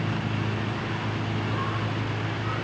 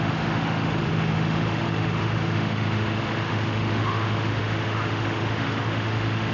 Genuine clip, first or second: first